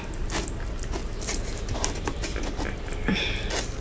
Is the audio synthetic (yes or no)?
no